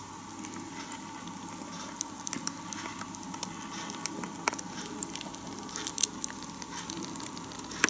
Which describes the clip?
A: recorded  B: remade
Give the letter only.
A